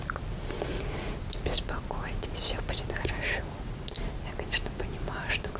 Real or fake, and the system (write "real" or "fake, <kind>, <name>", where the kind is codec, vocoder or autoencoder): real